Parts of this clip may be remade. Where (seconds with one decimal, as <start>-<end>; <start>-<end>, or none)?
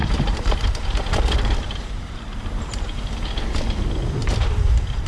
0.0-3.1; 4.2-5.1